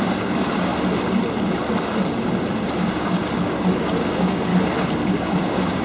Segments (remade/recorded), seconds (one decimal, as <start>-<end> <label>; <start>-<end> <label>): 0.0-0.7 remade; 0.7-2.8 recorded; 2.8-3.2 remade; 3.2-3.8 recorded; 3.8-4.5 remade; 4.5-5.1 recorded; 5.1-5.8 remade

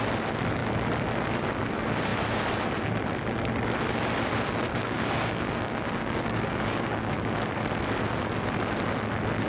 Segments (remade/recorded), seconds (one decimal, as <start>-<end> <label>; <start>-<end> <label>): 0.0-4.7 recorded; 4.7-7.3 remade; 7.3-9.5 recorded

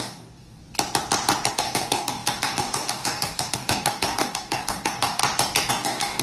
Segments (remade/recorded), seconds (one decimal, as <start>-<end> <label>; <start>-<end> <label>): 0.0-0.6 remade; 0.6-1.5 recorded; 1.5-5.2 remade; 5.2-5.7 recorded; 5.7-6.2 remade

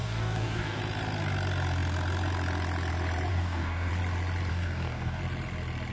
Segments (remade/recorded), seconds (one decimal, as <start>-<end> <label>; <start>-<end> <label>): 0.0-0.8 remade; 0.8-3.3 recorded; 3.3-3.9 remade; 3.9-4.5 recorded; 4.5-5.2 remade; 5.2-5.9 recorded